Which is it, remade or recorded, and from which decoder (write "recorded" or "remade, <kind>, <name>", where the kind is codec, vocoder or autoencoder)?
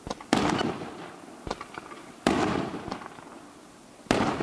recorded